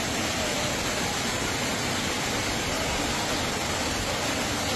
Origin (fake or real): real